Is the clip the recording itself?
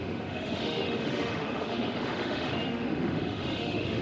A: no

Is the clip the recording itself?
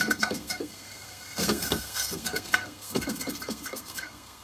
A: no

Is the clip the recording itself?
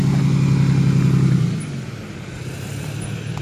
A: yes